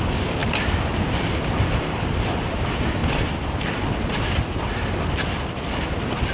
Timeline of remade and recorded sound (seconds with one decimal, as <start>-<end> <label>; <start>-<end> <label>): 0.0-6.3 recorded